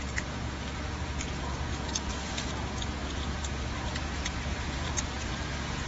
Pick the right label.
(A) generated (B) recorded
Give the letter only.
A